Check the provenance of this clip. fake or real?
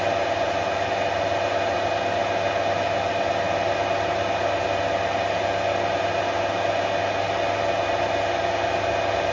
real